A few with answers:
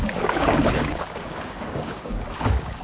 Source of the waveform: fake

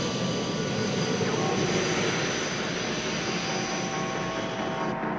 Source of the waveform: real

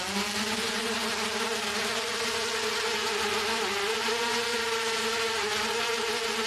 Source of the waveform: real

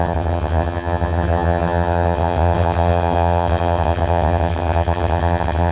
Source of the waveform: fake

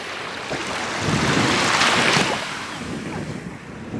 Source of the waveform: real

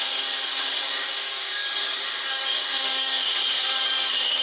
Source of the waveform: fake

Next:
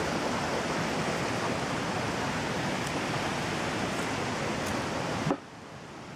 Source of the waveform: real